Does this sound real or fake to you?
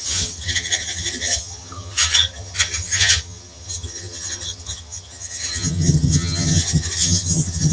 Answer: fake